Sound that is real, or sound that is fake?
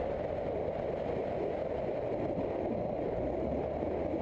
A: real